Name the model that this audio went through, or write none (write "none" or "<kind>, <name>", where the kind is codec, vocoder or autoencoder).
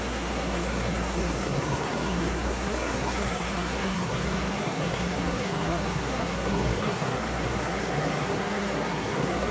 codec, SNAC